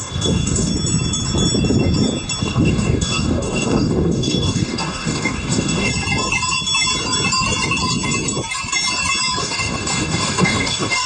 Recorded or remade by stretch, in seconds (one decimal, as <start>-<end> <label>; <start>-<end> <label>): 0.0-0.7 remade; 0.7-2.4 recorded; 2.4-5.9 remade; 5.9-9.4 recorded; 9.4-11.1 remade